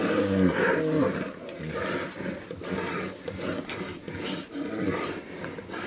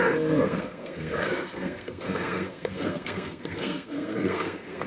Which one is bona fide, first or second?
first